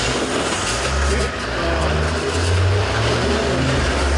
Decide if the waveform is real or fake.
real